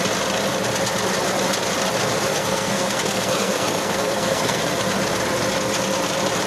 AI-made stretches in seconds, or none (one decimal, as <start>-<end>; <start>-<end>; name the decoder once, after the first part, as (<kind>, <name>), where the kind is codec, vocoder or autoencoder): 2.3-4.6 (codec, SNAC)